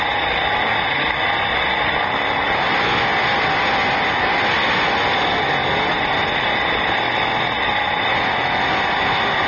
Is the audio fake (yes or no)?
no